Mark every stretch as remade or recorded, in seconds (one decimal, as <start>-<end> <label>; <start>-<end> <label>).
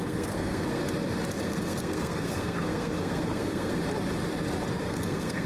0.0-0.8 remade; 0.8-1.4 recorded; 1.4-3.8 remade; 3.8-4.8 recorded; 4.8-5.5 remade